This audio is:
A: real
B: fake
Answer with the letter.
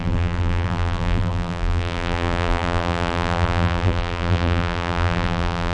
B